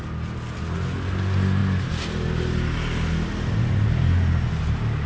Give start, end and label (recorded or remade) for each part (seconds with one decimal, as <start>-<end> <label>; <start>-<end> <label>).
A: 0.0-5.1 recorded